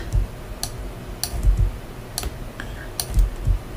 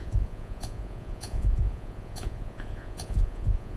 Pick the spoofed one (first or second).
second